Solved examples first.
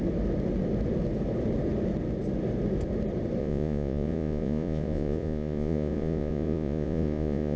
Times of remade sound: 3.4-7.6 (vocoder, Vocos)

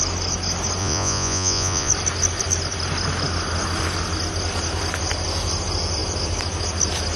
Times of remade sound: 0.8-1.9 (vocoder, Vocos)

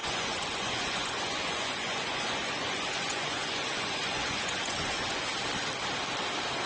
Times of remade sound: 0.0-5.3 (vocoder, Vocos)

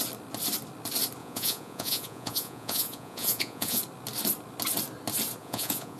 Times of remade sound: 1.2-3.8 (vocoder, Vocos); 5.4-6.0

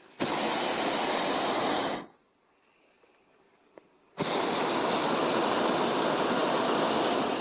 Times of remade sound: none

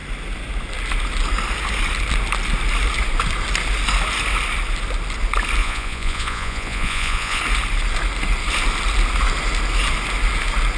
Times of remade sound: 5.6-7.4 (vocoder, Vocos)